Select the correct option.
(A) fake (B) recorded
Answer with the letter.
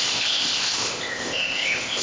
A